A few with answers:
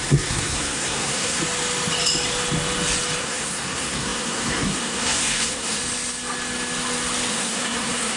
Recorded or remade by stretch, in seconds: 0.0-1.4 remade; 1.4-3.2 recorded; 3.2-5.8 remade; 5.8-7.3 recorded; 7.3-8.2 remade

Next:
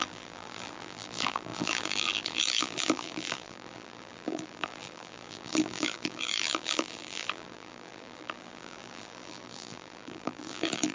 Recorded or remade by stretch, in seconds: 0.0-10.9 remade

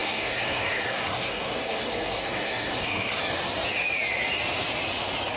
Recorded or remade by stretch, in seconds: 0.0-3.2 remade; 3.2-5.4 recorded